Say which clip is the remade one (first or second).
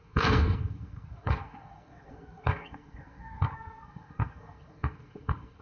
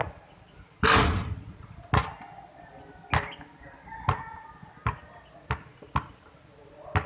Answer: first